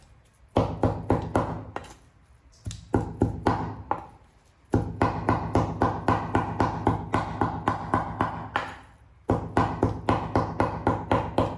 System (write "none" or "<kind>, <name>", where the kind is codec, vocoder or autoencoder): none